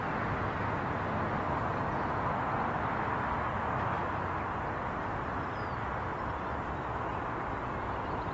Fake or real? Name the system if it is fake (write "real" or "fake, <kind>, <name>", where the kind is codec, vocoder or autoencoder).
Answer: fake, vocoder, BigVGAN v2